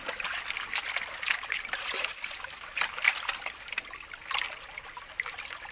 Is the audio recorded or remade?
recorded